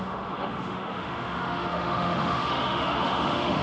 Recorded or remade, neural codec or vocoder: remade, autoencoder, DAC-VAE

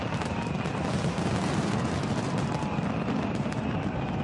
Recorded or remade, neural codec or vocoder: recorded